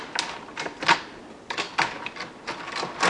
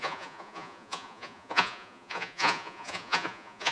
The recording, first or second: first